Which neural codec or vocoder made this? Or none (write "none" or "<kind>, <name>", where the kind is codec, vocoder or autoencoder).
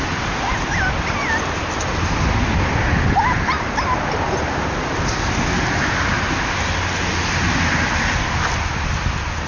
none